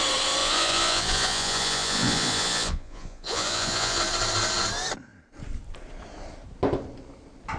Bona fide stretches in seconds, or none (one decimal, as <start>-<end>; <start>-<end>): 0.0-0.4; 4.0-7.6

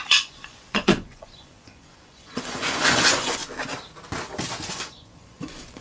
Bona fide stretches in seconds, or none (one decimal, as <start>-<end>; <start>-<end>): 3.4-4.7

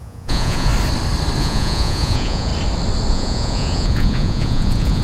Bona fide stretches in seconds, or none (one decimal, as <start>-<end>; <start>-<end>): 0.7-1.4; 2.5-3.1

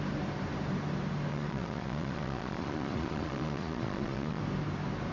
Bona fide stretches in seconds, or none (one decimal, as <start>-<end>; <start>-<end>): 0.0-1.3; 4.4-5.1

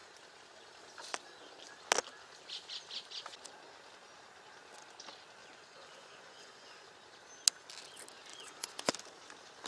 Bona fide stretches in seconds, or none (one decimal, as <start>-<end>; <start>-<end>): 0.0-5.4; 6.9-8.3; 8.9-9.7

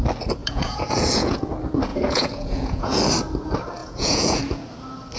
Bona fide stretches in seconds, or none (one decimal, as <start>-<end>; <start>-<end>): 0.0-0.4; 1.4-1.9; 3.0-3.8; 4.4-5.2

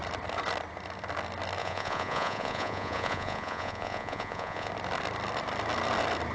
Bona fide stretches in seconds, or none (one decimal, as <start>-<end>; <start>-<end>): 0.0-1.6; 4.7-6.3

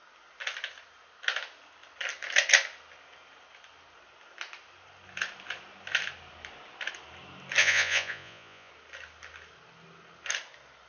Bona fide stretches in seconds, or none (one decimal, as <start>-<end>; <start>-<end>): 0.0-7.6; 8.7-10.9